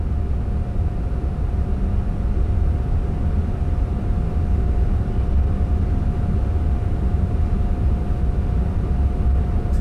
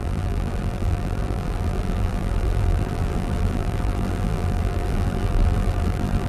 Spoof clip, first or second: second